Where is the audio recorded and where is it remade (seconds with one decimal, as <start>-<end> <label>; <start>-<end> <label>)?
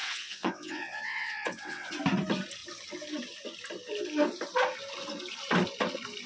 0.0-1.9 remade; 1.9-6.3 recorded